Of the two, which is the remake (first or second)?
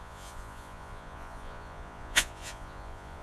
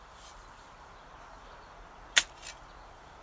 first